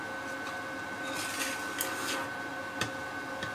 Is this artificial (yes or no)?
yes